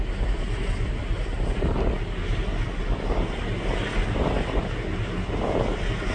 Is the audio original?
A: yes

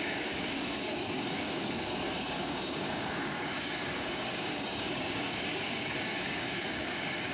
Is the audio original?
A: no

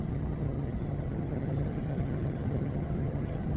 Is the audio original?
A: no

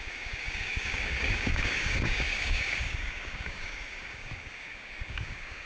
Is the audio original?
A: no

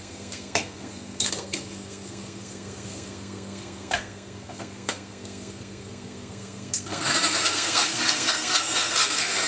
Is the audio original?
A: no